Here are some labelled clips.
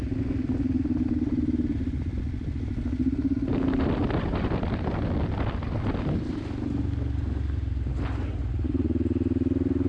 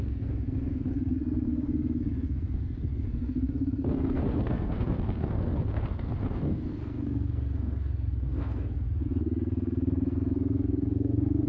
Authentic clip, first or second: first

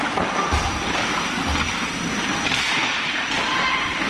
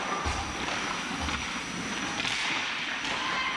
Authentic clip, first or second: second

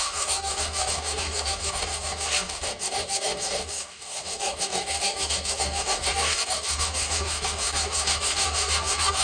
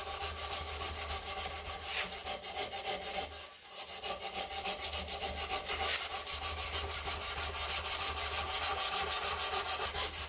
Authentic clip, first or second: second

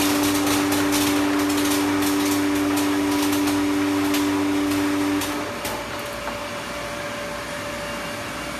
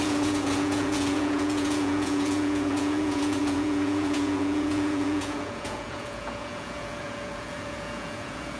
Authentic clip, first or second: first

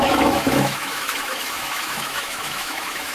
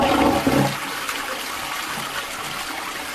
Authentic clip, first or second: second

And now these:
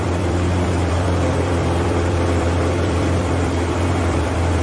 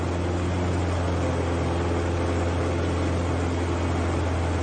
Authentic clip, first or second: second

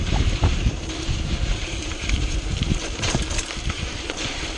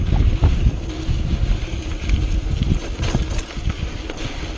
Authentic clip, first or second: second